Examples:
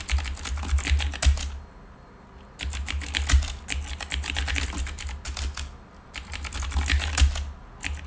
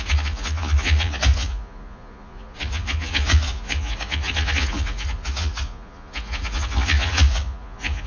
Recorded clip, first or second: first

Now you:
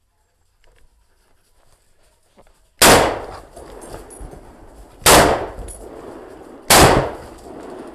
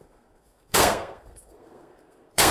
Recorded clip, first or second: first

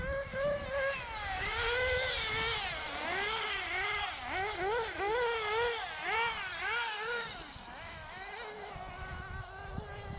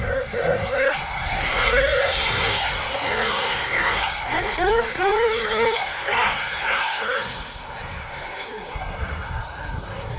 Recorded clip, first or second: first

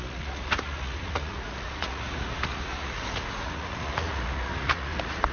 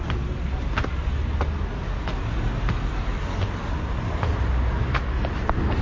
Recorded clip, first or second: second